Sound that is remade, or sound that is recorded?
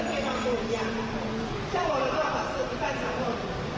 remade